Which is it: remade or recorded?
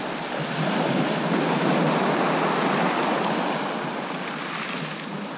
recorded